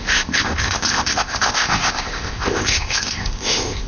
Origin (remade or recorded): remade